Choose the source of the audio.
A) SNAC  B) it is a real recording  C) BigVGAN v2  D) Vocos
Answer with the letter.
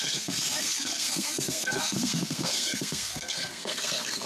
A